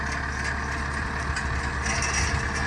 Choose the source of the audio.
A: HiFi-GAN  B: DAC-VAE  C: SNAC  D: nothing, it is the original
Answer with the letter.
D